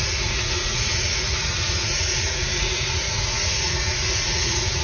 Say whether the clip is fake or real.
fake